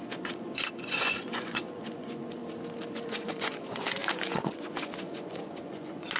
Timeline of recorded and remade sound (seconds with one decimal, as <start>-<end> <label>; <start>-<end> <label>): 0.0-2.4 remade; 2.4-2.9 recorded; 2.9-6.2 remade